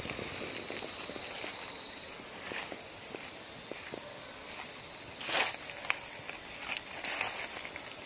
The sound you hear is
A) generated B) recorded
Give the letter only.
B